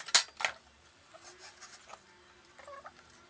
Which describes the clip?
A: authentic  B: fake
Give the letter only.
A